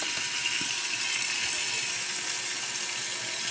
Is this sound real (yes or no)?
yes